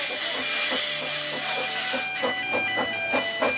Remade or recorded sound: recorded